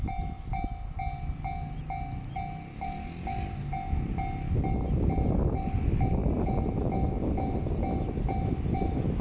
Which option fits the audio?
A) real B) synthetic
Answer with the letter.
A